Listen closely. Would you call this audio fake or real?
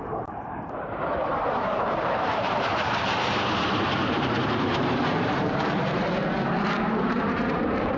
fake